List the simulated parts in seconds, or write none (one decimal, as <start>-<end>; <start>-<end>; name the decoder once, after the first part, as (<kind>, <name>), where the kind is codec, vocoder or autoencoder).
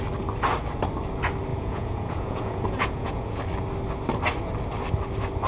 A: 1.5-3.4 (vocoder, Vocos)